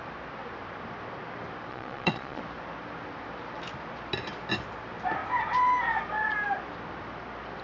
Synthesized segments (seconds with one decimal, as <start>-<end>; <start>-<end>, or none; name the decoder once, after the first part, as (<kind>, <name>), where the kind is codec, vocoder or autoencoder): 1.7-2.4 (vocoder, Vocos)